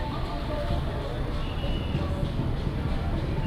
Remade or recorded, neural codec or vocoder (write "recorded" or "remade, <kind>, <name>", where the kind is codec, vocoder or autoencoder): recorded